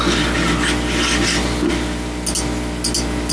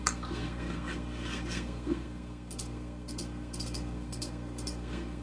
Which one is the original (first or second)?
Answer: first